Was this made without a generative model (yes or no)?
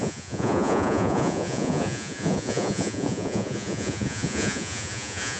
no